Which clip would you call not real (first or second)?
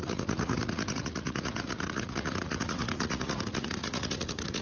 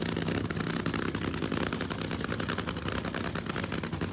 first